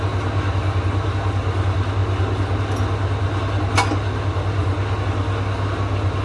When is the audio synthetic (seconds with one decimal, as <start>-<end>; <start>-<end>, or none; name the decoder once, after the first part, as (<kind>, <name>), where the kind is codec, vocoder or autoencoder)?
none